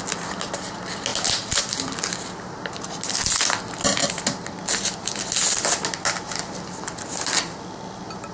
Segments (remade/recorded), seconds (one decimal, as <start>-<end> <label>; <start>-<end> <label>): 0.0-8.3 recorded